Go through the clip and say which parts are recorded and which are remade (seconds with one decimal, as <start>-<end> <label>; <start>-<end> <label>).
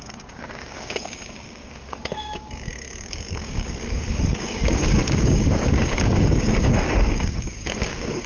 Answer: 0.0-8.3 remade